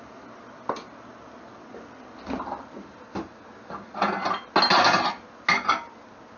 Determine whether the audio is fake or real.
real